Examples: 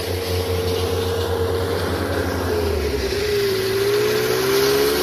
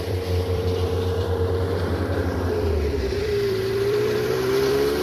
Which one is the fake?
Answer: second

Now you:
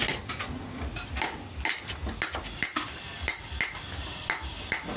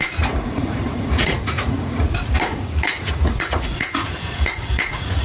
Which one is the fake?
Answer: second